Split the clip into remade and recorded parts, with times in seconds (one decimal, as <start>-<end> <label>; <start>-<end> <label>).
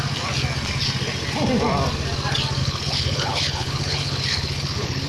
0.0-2.6 recorded; 2.6-5.1 remade